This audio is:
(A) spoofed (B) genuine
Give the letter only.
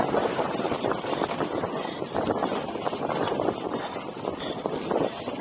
B